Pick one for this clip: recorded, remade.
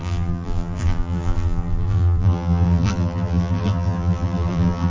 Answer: remade